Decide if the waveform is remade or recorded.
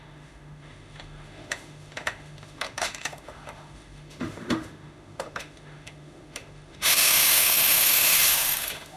remade